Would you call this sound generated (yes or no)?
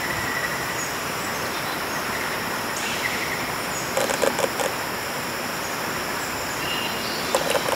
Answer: yes